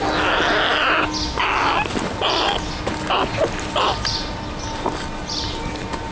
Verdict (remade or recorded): recorded